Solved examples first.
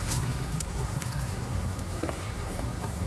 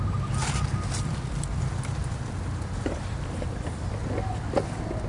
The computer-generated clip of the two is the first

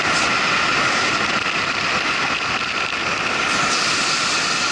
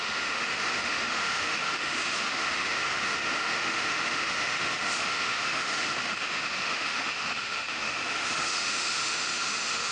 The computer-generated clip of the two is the second